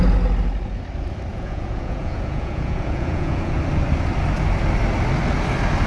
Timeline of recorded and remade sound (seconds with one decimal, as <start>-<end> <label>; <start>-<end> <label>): 0.0-1.3 recorded; 1.3-3.6 remade; 3.6-5.9 recorded

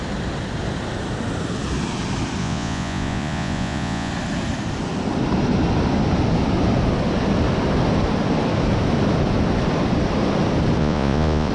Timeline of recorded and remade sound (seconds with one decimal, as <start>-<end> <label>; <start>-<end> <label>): 0.0-2.4 recorded; 2.4-4.1 remade; 4.1-10.8 recorded; 10.8-11.5 remade

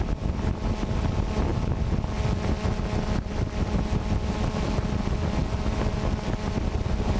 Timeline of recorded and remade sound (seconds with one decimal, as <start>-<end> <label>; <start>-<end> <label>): 0.0-7.2 recorded

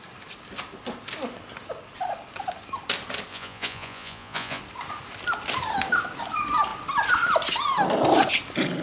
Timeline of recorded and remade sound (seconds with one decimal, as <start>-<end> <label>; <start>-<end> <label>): 0.0-3.3 recorded; 3.3-4.6 remade; 4.6-8.8 recorded

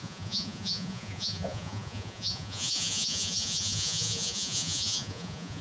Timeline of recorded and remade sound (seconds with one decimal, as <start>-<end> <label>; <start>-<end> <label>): 0.0-5.6 remade

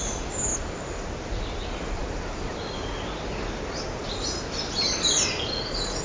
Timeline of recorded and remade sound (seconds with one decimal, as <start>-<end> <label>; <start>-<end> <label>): 0.0-6.0 recorded

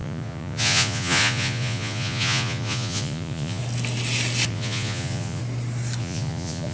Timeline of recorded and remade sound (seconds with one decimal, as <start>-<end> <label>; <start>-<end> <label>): 0.0-3.6 remade; 3.6-4.5 recorded; 4.5-5.4 remade; 5.4-6.0 recorded; 6.0-6.7 remade